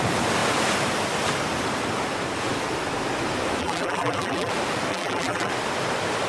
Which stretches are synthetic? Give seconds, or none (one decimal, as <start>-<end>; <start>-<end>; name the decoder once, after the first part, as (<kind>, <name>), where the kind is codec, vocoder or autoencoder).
3.6-4.5 (vocoder, BigVGAN v2); 4.9-5.5